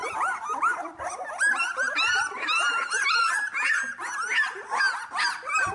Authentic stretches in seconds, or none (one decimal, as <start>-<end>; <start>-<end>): 0.0-5.7

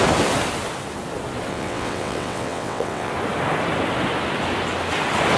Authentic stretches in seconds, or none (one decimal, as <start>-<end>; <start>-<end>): 0.0-1.5; 3.1-5.4

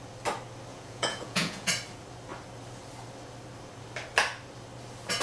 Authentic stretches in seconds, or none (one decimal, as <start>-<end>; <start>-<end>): 0.0-0.7; 1.7-5.2

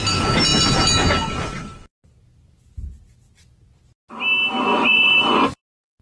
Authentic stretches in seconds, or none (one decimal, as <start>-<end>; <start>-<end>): 0.0-4.7; 5.6-6.0

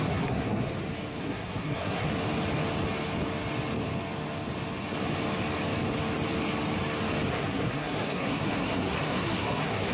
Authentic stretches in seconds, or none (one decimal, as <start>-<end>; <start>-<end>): 0.7-1.2; 2.1-7.3